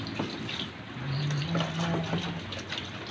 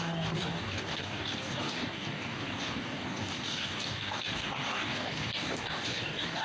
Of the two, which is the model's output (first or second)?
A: second